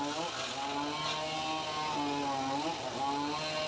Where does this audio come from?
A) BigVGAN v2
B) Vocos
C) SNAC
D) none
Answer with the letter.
D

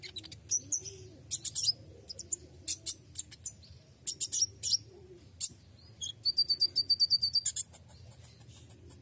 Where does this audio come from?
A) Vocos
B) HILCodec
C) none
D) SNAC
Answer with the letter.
C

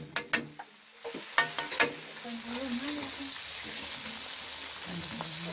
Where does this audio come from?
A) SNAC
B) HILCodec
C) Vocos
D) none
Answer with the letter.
D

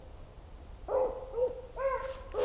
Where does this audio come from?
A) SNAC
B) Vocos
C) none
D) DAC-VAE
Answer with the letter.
C